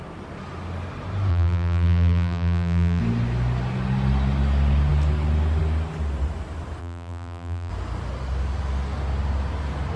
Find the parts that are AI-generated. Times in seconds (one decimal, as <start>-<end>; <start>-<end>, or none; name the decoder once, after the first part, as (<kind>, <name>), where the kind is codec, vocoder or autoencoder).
1.3-3.0 (vocoder, BigVGAN v2); 6.8-7.7